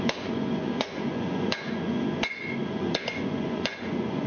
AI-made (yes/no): yes